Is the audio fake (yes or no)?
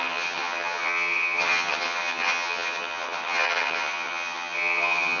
yes